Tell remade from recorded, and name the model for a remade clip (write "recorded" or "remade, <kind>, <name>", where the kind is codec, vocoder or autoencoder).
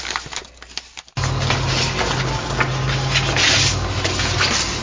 recorded